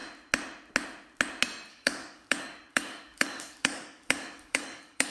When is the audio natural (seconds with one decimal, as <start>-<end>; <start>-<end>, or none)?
0.0-1.7